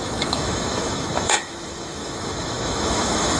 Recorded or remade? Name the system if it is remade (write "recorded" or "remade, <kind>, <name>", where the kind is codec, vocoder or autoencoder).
remade, autoencoder, DAC-VAE